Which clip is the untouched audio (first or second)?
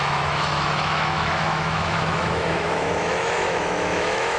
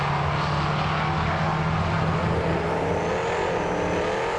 second